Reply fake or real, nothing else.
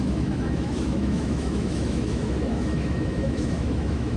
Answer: fake